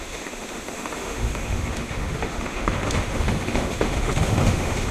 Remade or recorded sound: remade